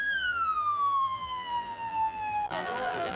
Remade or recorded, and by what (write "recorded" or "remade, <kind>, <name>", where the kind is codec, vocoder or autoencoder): remade, vocoder, BigVGAN v2